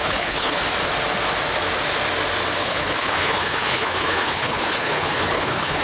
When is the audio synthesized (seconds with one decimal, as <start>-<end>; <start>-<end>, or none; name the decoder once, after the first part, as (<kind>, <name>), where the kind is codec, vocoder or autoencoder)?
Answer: 0.0-0.6 (codec, HILCodec); 2.6-5.8